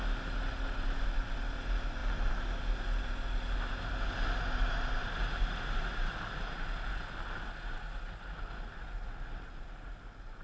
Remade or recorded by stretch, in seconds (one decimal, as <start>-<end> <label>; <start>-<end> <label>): 0.0-10.4 recorded